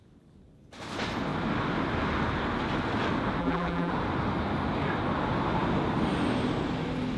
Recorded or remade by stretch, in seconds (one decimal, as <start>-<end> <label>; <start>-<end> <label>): 0.0-3.4 recorded; 3.4-3.9 remade; 3.9-7.2 recorded